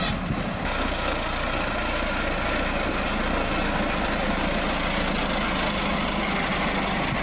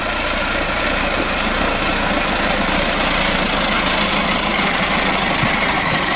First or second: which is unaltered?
first